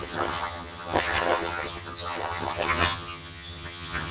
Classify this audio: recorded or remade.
remade